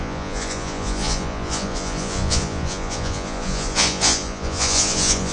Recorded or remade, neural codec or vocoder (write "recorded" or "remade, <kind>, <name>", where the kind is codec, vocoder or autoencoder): remade, vocoder, Vocos